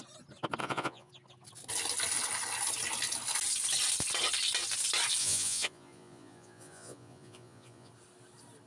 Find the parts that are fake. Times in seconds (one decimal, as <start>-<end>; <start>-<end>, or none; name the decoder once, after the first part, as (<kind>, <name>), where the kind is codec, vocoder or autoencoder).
0.6-1.1 (vocoder, Vocos); 5.2-7.9